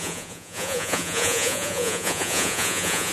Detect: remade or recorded remade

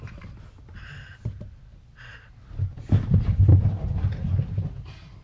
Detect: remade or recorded recorded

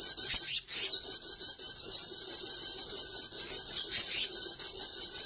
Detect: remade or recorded recorded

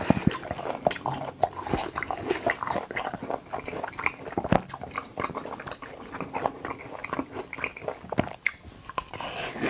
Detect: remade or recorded recorded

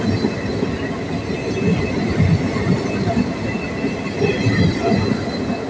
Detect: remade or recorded recorded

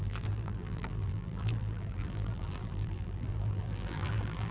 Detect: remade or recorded remade